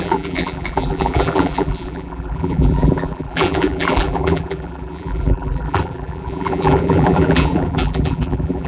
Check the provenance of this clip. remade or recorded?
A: remade